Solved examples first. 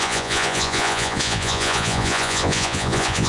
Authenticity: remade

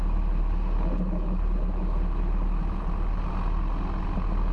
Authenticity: recorded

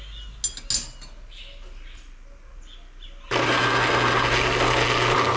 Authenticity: recorded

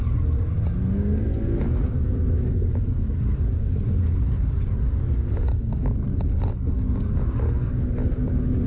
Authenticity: recorded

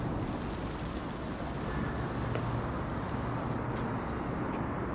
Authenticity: recorded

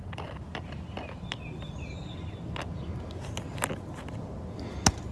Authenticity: recorded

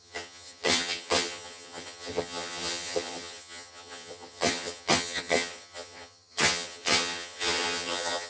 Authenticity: remade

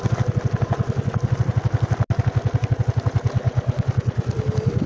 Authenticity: recorded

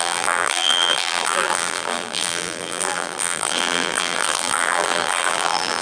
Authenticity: remade